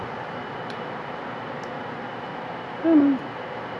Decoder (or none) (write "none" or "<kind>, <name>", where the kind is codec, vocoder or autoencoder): none